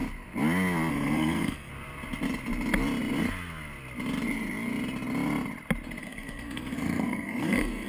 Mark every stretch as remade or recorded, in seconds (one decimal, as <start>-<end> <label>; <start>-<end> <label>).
0.0-0.9 recorded; 0.9-1.7 remade; 1.7-6.0 recorded; 6.0-7.9 remade